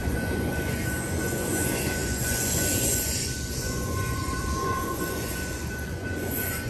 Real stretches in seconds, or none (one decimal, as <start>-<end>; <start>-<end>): none